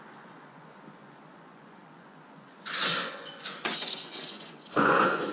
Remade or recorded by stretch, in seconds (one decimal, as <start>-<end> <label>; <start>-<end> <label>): 0.0-5.3 remade